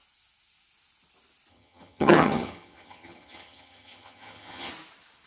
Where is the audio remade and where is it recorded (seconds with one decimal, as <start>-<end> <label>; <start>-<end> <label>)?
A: 0.0-1.5 recorded; 1.5-4.7 remade; 4.7-5.3 recorded